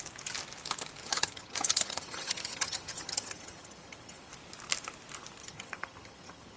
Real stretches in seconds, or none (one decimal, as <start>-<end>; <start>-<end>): 0.0-1.0; 4.3-5.4